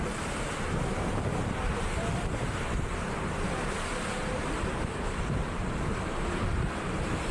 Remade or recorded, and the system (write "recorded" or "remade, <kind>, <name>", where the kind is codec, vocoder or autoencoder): remade, vocoder, BigVGAN v2